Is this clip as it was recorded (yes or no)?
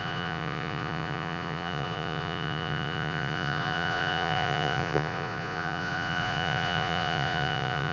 no